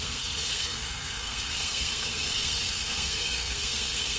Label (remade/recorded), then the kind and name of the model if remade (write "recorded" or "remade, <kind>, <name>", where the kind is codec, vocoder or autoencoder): remade, codec, SNAC